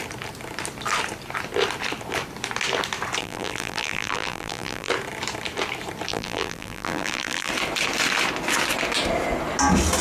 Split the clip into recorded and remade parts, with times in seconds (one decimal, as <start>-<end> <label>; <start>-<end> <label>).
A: 0.0-3.2 recorded; 3.2-4.9 remade; 4.9-6.1 recorded; 6.1-7.5 remade; 7.5-10.0 recorded